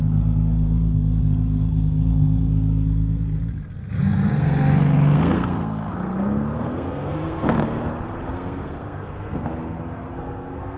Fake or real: fake